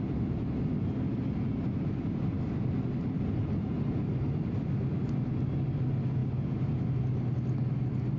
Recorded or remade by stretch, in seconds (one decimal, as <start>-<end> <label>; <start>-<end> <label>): 0.0-8.2 recorded